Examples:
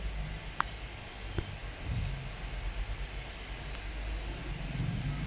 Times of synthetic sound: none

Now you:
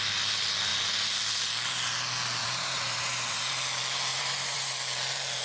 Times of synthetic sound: 2.4-3.5 (vocoder, BigVGAN v2); 4.1-4.7

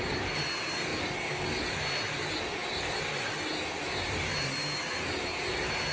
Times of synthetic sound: none

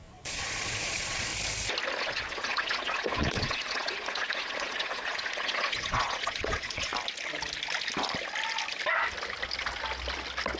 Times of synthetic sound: 0.0-1.3 (vocoder, Vocos); 2.0-6.9

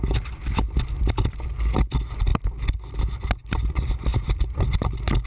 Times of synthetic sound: none

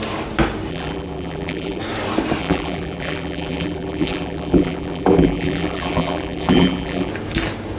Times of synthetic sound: 0.7-1.8 (vocoder, BigVGAN v2); 2.4-7.1

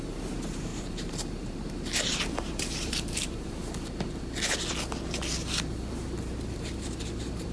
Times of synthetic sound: 0.0-3.6 (vocoder, BigVGAN v2); 6.3-7.5